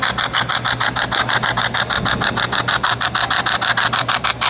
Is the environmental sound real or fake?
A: real